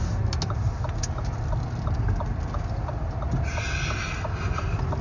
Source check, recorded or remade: recorded